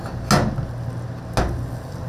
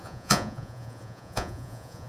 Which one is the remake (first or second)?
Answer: second